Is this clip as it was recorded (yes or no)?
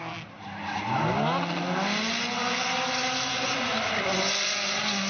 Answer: yes